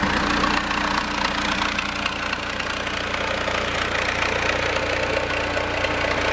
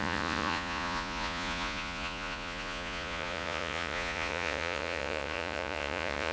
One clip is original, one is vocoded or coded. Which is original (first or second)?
first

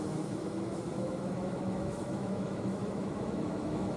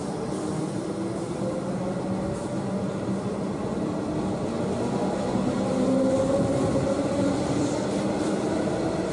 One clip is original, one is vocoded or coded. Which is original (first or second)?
second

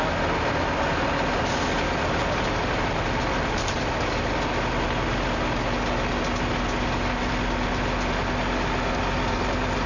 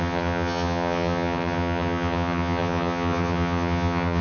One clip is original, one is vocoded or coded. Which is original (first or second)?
first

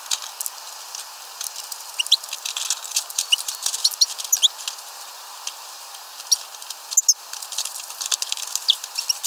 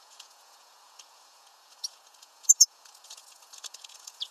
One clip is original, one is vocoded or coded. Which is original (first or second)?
first